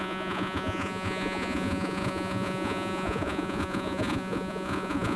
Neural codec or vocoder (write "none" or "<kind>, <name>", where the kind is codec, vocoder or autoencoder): vocoder, Vocos